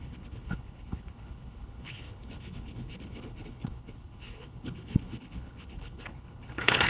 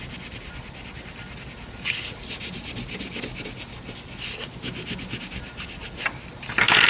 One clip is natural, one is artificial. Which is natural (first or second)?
second